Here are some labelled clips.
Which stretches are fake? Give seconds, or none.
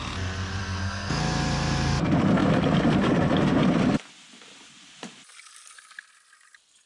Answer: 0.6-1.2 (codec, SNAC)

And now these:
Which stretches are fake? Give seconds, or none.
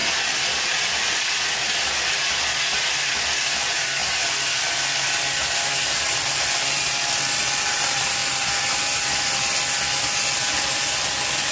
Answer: none